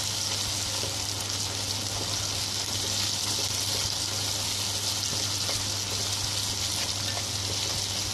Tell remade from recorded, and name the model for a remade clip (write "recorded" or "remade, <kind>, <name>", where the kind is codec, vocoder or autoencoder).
recorded